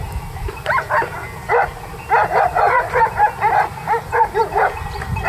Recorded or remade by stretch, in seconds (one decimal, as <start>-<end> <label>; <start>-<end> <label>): 0.0-1.2 remade; 1.2-4.4 recorded; 4.4-5.3 remade